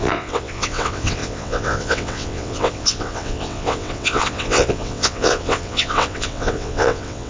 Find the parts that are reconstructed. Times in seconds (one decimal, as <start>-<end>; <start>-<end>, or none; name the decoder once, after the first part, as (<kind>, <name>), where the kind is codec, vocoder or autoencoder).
0.0-7.3 (vocoder, WaveNeXt)